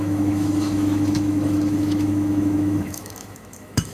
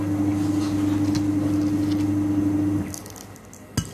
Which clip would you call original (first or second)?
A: second